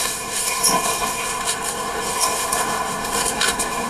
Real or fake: fake